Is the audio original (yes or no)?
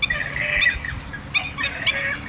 yes